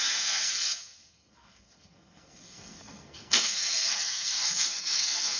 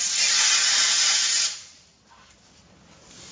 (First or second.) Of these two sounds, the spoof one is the first